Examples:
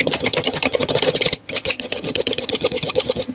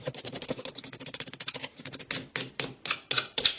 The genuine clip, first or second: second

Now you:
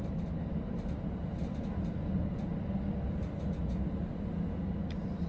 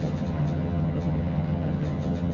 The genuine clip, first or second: first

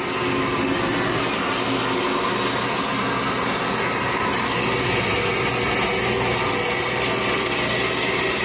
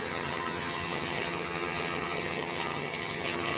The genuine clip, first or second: first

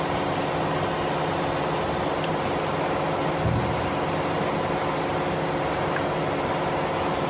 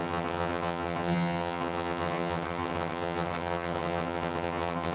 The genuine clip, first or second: first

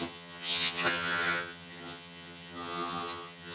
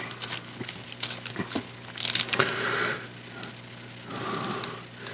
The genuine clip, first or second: second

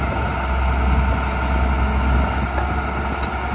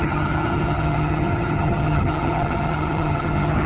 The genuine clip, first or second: first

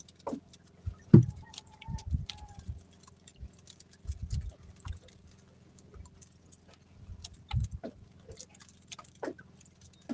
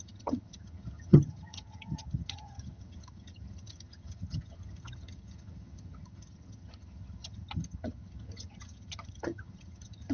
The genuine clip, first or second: first